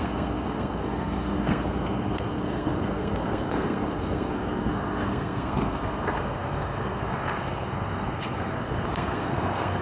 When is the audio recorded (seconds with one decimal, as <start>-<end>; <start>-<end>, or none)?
none